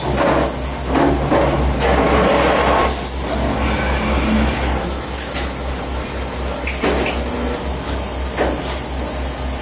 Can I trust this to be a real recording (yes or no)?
yes